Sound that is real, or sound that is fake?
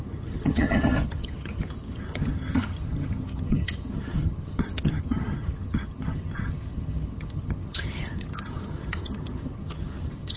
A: fake